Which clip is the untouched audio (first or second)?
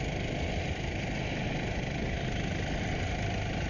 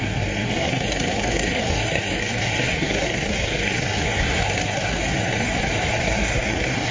first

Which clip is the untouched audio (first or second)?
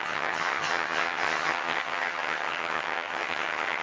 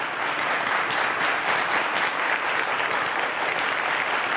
second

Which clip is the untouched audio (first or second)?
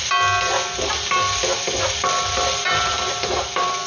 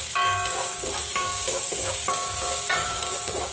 first